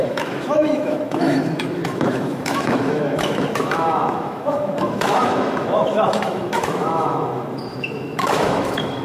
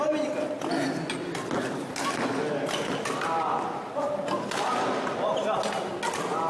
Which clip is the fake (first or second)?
first